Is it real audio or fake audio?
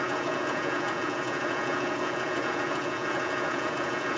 fake